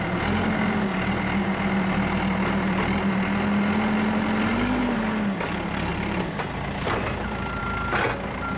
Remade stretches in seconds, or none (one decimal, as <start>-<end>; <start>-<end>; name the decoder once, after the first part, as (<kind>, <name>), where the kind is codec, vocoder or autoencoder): 4.5-5.0 (vocoder, BigVGAN v2); 5.9-7.6